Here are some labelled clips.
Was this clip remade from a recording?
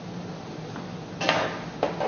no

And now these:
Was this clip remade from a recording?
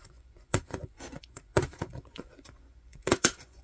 yes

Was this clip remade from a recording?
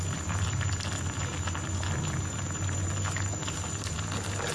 no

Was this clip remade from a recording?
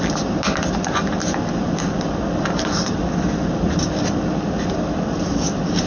no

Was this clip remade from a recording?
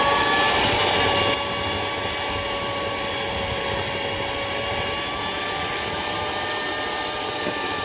no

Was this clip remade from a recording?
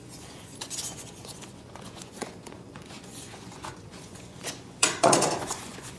yes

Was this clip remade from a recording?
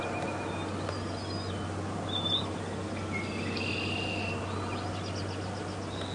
no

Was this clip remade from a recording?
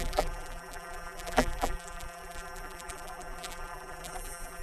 yes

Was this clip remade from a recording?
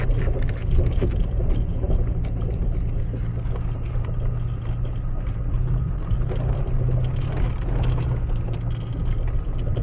no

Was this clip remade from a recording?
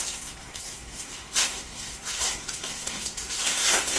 yes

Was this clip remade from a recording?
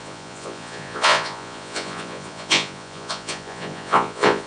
yes